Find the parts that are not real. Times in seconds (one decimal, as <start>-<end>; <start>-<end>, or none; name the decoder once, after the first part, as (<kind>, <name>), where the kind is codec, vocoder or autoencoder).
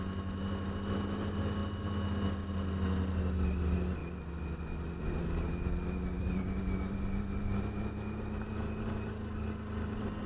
none